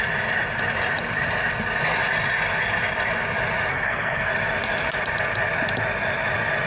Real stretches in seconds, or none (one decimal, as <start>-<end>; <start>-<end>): 0.0-3.7; 4.3-6.7